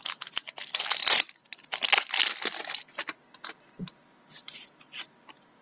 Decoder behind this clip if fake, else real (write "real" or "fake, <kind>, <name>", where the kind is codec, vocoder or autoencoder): real